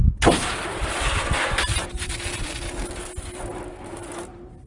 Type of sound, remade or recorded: recorded